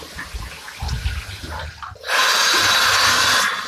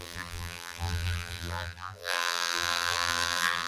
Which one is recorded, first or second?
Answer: first